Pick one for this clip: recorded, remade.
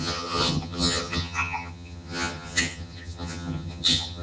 remade